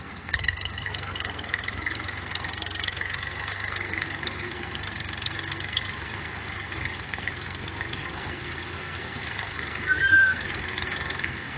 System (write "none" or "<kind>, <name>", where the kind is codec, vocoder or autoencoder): codec, SNAC